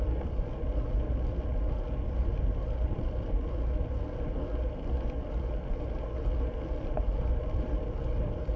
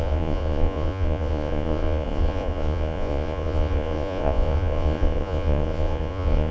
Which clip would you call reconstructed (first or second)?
second